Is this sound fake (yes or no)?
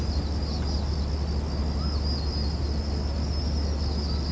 no